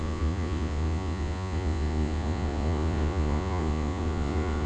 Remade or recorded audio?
remade